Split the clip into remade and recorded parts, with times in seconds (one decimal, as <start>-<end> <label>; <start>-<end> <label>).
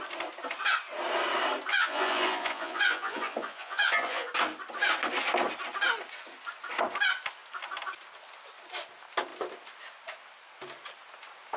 0.0-1.7 recorded; 1.7-4.3 remade; 4.3-11.6 recorded